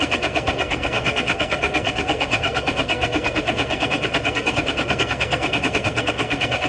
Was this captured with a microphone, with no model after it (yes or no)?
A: no